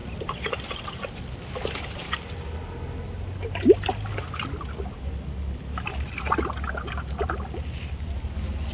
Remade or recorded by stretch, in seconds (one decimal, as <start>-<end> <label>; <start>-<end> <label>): 0.0-8.7 recorded